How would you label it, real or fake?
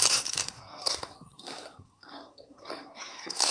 fake